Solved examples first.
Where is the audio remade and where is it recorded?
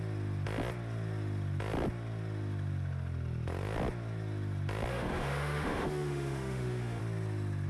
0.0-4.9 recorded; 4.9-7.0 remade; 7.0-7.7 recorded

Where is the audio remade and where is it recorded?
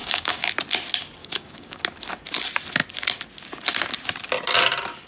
0.0-0.5 remade; 0.5-1.2 recorded; 1.2-1.8 remade; 1.8-5.1 recorded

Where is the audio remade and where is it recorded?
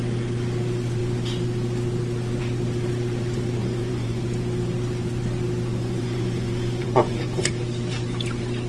0.0-3.6 recorded; 3.6-4.2 remade; 4.2-5.7 recorded; 5.7-7.5 remade; 7.5-8.7 recorded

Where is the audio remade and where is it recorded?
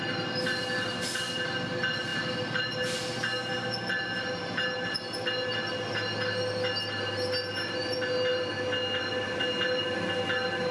0.0-10.7 recorded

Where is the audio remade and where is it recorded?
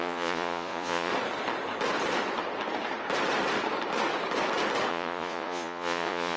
0.0-1.1 remade; 1.1-4.9 recorded; 4.9-6.4 remade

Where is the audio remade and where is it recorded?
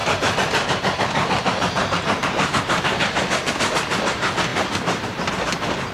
0.0-3.5 remade; 3.5-4.5 recorded; 4.5-5.3 remade; 5.3-5.9 recorded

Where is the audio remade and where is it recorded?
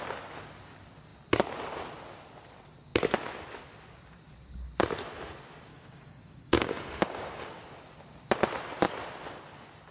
0.0-5.7 recorded; 5.7-7.6 remade; 7.6-9.9 recorded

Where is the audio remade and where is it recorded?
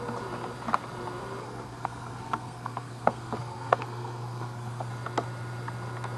0.0-1.4 recorded; 1.4-4.9 remade; 4.9-6.2 recorded